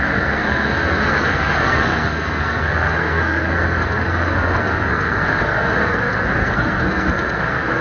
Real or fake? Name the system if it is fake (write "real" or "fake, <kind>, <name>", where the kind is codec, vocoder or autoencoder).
fake, codec, SNAC